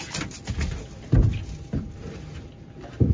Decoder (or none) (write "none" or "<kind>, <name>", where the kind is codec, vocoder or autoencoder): none